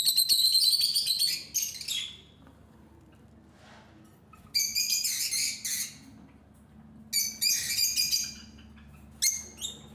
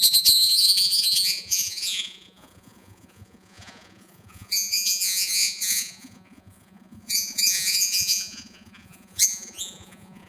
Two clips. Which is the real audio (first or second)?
first